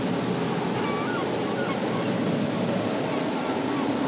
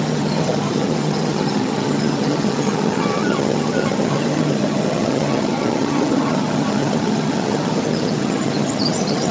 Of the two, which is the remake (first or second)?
second